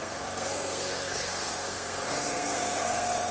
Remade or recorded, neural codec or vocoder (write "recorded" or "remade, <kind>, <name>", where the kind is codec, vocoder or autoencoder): remade, codec, SNAC